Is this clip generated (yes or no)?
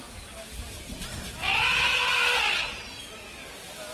no